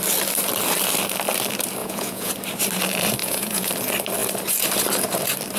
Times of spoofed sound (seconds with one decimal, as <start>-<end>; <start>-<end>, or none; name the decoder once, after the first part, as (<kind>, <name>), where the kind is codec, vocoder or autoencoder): 1.8-2.3 (vocoder, Vocos); 3.2-3.7